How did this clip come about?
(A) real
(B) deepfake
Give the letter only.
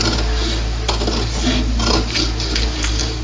A